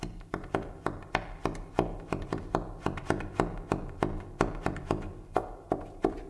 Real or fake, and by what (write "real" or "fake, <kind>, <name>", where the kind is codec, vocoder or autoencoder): real